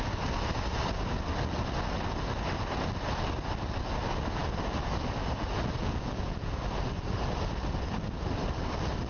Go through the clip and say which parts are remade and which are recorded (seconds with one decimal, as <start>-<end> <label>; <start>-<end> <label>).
0.0-5.8 recorded; 5.8-6.6 remade; 6.6-9.1 recorded